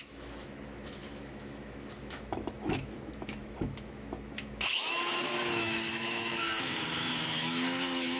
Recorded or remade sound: remade